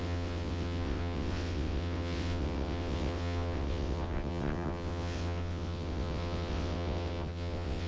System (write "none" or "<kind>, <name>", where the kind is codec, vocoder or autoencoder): vocoder, WaveNeXt